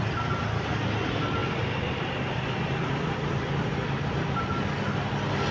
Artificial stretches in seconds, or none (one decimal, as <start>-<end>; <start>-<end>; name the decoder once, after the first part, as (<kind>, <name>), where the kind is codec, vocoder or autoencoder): 1.4-4.7 (vocoder, BigVGAN v2)